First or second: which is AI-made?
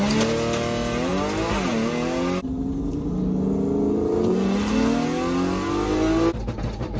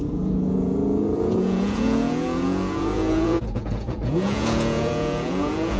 second